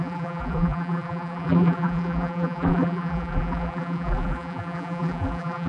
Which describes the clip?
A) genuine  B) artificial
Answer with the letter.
B